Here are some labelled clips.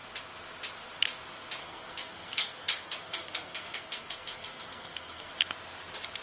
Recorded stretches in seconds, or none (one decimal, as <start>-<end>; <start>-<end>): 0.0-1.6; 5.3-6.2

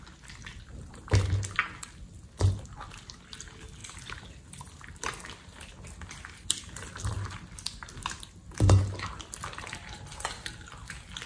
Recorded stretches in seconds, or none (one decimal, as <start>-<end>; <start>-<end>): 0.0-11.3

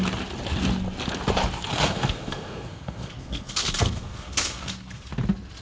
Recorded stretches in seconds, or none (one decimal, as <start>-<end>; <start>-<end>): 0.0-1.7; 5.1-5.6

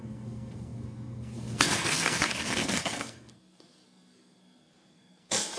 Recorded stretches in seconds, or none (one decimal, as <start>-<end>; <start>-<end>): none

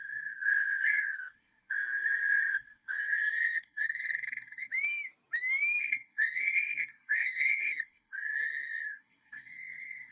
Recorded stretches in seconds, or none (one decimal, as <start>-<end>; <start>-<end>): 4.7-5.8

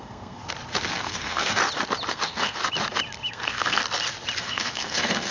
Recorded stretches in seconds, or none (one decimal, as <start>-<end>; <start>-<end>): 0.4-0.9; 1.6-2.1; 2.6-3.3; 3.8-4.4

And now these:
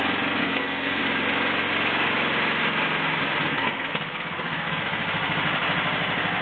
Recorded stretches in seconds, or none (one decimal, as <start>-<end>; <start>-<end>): 0.0-0.4; 1.0-3.5; 4.8-6.4